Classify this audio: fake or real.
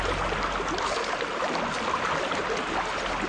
real